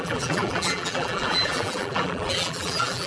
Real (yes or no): no